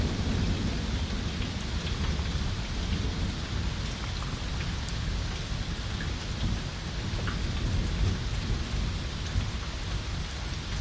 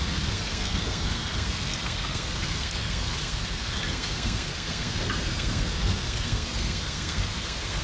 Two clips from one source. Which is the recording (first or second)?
first